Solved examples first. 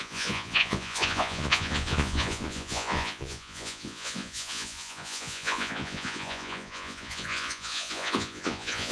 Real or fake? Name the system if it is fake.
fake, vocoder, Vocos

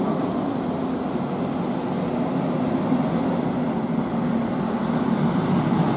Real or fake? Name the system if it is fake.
real